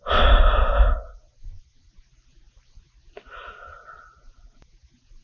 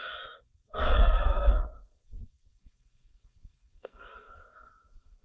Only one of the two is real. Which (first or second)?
first